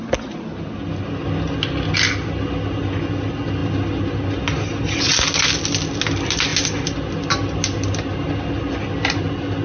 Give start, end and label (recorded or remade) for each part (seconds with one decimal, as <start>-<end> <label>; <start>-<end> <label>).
0.0-9.6 recorded